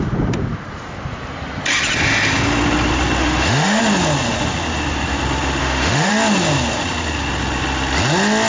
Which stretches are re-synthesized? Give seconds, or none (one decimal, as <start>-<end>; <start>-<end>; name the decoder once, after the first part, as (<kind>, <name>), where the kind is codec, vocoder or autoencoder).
3.2-3.8 (autoencoder, DAC-VAE); 5.6-6.1